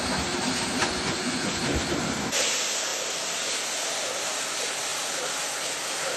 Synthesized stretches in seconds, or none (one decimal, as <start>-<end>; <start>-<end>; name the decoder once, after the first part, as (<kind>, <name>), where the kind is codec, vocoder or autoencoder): 0.8-1.6 (vocoder, Vocos)